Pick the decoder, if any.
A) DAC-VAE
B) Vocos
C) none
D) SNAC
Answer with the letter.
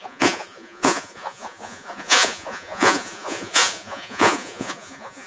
B